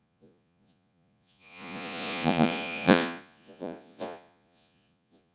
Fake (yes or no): yes